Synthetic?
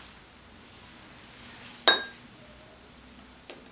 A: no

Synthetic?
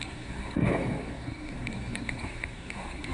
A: yes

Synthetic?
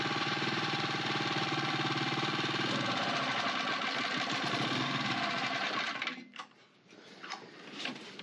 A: yes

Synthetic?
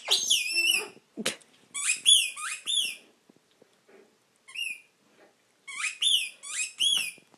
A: no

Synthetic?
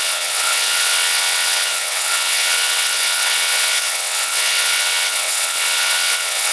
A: yes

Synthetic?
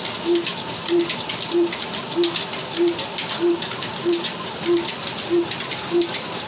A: no